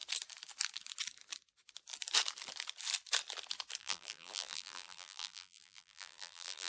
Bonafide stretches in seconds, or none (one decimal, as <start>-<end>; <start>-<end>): 0.0-3.8